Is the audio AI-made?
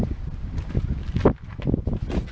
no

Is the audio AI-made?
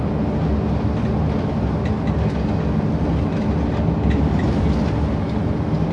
no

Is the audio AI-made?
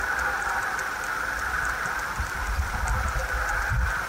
no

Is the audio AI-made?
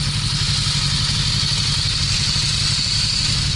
no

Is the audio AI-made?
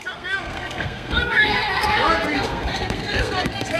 yes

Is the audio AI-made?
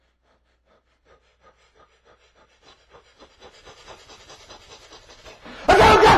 no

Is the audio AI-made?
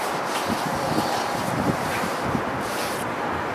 yes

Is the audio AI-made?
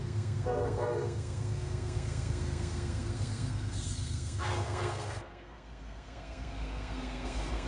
yes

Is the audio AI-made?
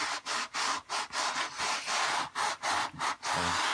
no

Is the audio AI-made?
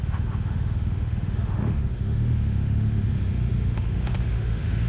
yes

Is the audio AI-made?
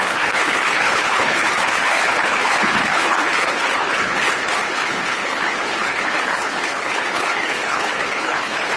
yes